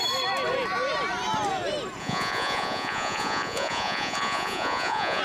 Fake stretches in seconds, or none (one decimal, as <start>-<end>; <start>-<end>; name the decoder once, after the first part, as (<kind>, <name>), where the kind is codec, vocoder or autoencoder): 2.0-5.2 (vocoder, Vocos)